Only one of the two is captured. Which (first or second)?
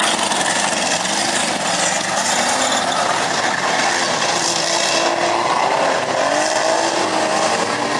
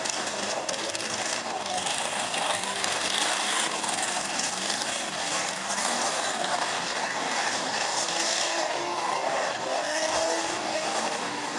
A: first